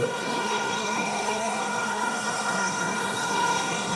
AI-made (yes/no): yes